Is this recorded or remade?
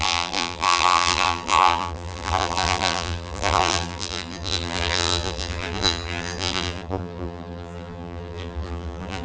remade